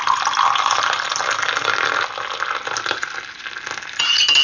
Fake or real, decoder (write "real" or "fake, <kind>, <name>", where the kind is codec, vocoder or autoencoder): real